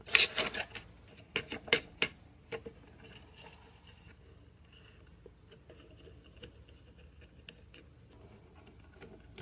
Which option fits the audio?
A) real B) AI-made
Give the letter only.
A